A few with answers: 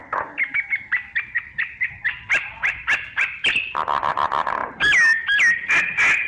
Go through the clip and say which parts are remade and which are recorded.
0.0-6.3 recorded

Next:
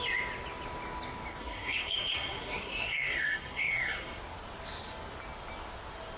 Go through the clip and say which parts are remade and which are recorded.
0.0-1.4 recorded; 1.4-4.2 remade; 4.2-6.2 recorded

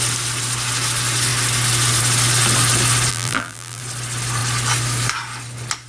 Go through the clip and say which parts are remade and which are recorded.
0.0-3.1 recorded; 3.1-3.8 remade; 3.8-5.9 recorded

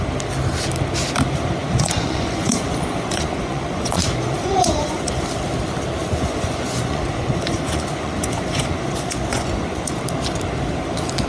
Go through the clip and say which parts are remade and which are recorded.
0.0-1.6 recorded; 1.6-5.2 remade; 5.2-6.0 recorded; 6.0-10.0 remade; 10.0-11.3 recorded

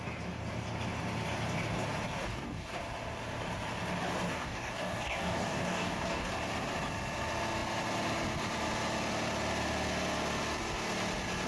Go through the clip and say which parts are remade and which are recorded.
0.0-2.2 recorded; 2.2-2.7 remade; 2.7-4.3 recorded; 4.3-6.3 remade; 6.3-11.5 recorded

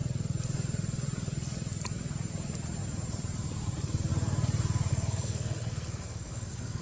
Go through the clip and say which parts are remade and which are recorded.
0.0-4.9 recorded; 4.9-6.8 remade

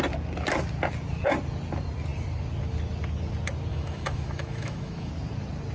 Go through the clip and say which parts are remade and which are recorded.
0.0-3.7 recorded; 3.7-5.1 remade; 5.1-5.7 recorded

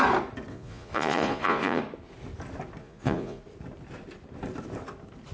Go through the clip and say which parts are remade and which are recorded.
0.0-0.5 recorded; 0.5-1.8 remade; 1.8-2.8 recorded; 2.8-3.4 remade; 3.4-5.3 recorded